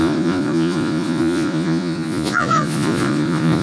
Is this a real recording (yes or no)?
no